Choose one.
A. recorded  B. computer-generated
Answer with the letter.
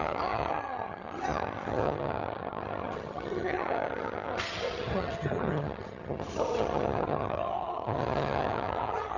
B